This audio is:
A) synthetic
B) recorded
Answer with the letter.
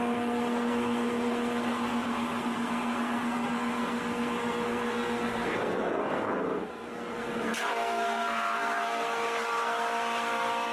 A